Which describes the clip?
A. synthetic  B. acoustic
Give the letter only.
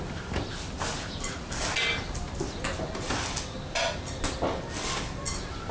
B